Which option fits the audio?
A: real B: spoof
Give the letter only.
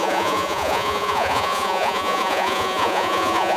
B